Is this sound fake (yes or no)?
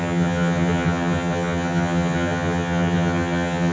yes